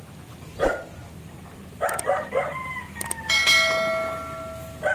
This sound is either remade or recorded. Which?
recorded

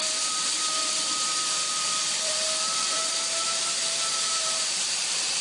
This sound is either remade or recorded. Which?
remade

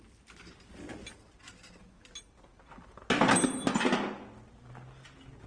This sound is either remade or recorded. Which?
recorded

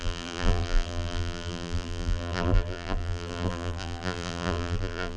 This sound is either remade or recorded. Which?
remade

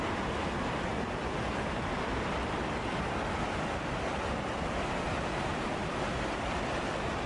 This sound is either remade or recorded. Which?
recorded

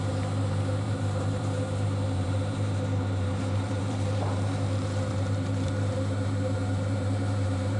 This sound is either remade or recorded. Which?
remade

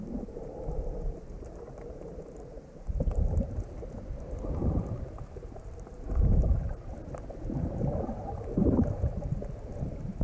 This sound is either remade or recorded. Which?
remade